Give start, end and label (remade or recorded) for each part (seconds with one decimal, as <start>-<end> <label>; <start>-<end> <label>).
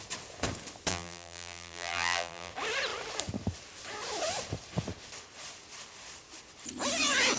0.0-0.9 recorded; 0.9-2.5 remade; 2.5-7.4 recorded